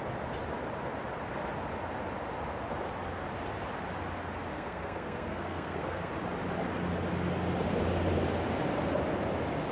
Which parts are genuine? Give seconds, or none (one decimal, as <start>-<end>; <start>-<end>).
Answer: 0.0-4.5; 6.1-9.7